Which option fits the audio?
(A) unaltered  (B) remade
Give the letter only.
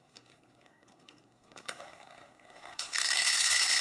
B